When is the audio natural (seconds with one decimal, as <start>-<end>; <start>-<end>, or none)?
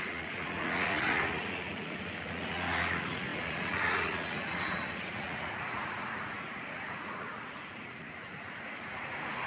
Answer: none